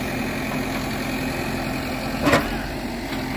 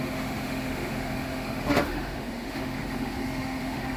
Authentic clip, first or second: first